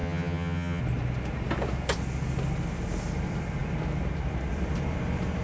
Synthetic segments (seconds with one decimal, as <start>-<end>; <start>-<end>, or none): 0.0-0.8